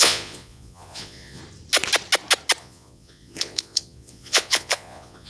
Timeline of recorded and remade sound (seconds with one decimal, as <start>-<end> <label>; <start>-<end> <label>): 0.0-1.4 remade; 1.4-2.6 recorded; 2.6-5.3 remade